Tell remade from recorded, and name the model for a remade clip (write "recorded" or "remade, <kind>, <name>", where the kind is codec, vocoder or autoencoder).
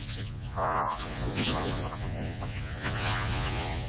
remade, vocoder, Vocos